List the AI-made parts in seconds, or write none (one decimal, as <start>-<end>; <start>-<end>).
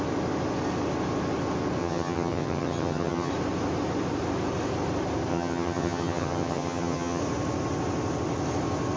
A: 1.8-3.3; 5.3-7.2